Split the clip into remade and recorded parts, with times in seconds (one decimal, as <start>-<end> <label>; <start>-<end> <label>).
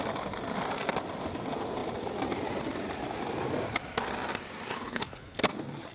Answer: 0.0-4.7 recorded; 4.7-5.4 remade; 5.4-5.9 recorded